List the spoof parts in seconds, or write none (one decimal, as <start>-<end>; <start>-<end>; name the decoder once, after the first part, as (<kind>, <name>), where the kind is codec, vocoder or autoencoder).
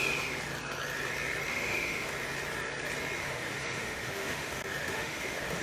1.5-2.1 (autoencoder, DAC-VAE); 3.2-5.6